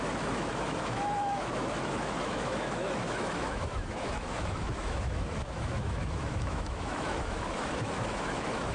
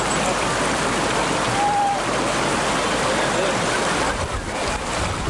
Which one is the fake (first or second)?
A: first